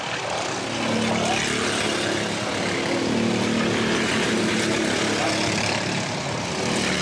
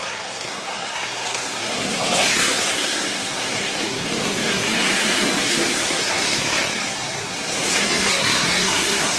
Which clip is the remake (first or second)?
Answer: second